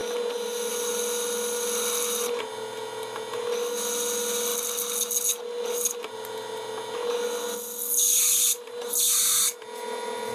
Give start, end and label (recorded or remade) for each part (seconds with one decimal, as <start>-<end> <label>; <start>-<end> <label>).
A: 0.0-8.1 recorded; 8.1-8.9 remade; 8.9-10.3 recorded